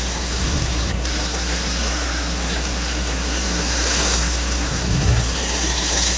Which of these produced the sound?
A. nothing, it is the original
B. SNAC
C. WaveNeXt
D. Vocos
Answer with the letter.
B